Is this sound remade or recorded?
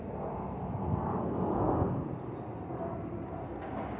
recorded